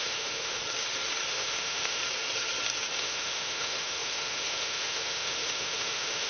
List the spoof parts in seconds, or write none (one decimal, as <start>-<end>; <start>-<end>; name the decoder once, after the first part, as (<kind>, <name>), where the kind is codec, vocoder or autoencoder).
0.0-0.6 (autoencoder, DAC-VAE); 1.3-2.0; 3.0-6.3